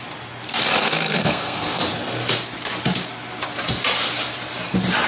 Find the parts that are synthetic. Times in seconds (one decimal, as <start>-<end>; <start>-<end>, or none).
0.8-1.8